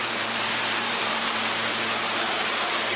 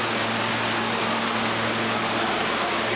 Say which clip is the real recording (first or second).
second